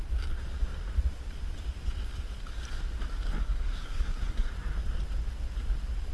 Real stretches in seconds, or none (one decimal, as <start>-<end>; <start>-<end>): 0.0-3.4; 4.5-6.1